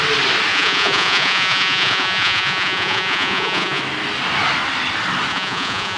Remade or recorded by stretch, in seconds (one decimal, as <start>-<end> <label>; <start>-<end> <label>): 0.0-0.5 recorded; 0.5-3.8 remade; 3.8-5.3 recorded; 5.3-6.0 remade